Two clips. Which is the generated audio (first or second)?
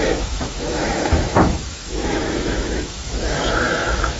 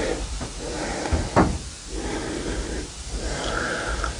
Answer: first